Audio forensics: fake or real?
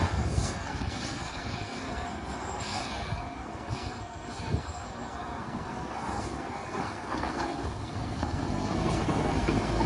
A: fake